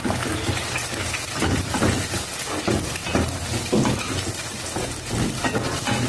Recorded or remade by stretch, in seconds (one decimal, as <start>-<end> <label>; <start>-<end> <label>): 0.0-6.1 recorded

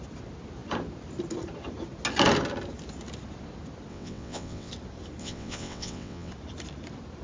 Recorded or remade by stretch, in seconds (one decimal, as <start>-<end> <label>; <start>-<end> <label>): 0.0-3.9 recorded; 3.9-4.7 remade; 4.7-5.2 recorded; 5.2-6.3 remade; 6.3-7.2 recorded

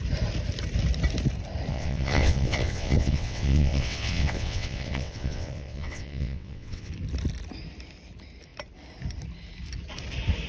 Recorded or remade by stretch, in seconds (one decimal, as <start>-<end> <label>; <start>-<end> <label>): 0.0-1.7 recorded; 1.7-6.9 remade; 6.9-10.5 recorded

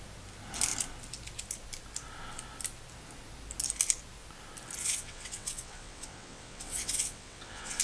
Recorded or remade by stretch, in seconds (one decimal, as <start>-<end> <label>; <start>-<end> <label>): 0.0-4.8 recorded; 4.8-7.8 remade

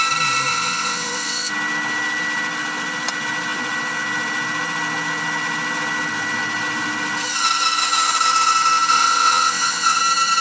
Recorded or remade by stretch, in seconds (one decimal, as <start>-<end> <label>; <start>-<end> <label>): 0.0-0.5 recorded; 0.5-1.5 remade; 1.5-8.9 recorded; 8.9-10.0 remade; 10.0-10.4 recorded

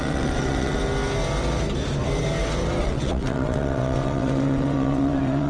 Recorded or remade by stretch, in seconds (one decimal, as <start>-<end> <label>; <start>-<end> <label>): 0.0-0.8 remade; 0.8-2.8 recorded; 2.8-5.5 remade

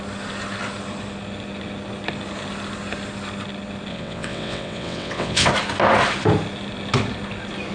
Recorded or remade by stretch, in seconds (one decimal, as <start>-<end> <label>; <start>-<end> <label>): 0.0-3.9 recorded; 3.9-5.5 remade; 5.5-7.7 recorded